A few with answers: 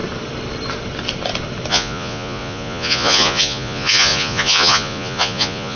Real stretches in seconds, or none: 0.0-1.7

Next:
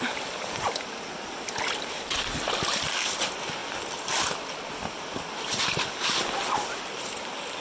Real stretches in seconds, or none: 0.0-7.6

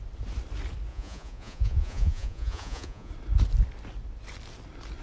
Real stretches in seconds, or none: 0.0-0.9; 3.1-5.0